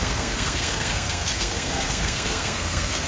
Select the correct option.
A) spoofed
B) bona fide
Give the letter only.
A